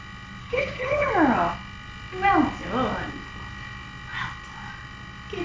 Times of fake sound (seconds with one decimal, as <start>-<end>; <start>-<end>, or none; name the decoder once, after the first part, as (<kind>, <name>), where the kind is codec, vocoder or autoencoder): 0.4-1.1 (codec, HILCodec)